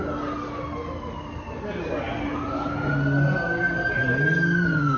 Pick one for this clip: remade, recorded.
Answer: recorded